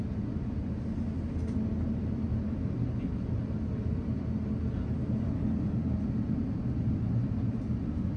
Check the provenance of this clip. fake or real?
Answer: real